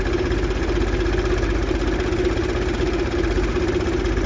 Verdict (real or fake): real